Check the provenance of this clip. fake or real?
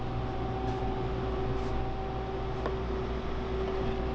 real